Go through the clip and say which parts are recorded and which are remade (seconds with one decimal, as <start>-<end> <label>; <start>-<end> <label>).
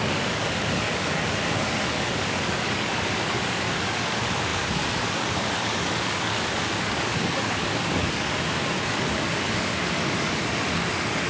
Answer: 0.0-11.3 remade